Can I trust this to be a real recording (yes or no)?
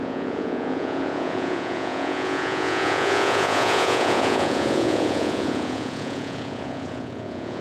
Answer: no